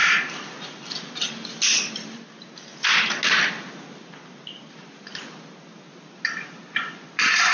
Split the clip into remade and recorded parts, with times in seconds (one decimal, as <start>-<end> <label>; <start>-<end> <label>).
0.0-6.7 recorded; 6.7-7.5 remade